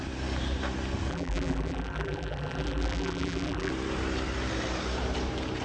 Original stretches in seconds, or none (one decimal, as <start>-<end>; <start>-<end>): 0.0-1.1; 3.7-5.6